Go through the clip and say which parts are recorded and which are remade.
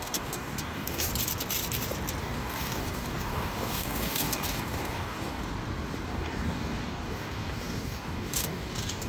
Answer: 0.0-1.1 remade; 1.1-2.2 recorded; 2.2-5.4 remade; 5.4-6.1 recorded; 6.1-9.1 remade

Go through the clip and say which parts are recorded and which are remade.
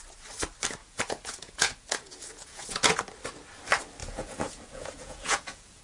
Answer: 0.0-0.8 recorded; 0.8-3.0 remade; 3.0-4.0 recorded; 4.0-5.8 remade